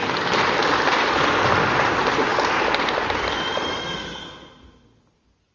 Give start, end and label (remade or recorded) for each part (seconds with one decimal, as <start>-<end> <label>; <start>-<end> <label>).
0.0-5.5 recorded